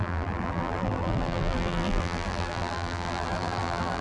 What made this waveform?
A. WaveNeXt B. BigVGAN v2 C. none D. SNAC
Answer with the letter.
B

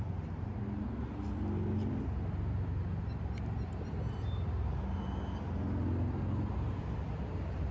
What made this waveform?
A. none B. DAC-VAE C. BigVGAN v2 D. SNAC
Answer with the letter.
A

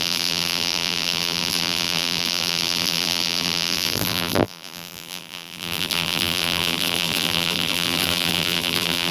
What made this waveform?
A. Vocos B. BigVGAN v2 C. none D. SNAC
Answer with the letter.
B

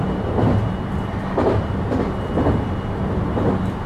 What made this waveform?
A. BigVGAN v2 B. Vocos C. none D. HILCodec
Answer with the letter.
C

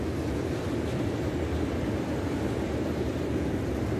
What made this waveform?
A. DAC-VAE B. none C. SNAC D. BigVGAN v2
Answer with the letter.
B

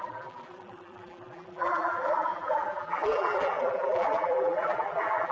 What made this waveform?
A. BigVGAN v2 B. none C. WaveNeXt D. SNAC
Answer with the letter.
A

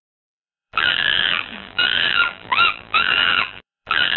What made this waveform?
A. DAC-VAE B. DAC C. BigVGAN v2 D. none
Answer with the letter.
C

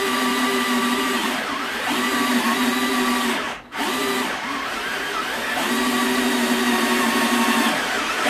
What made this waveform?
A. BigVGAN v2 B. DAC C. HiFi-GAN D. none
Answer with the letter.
A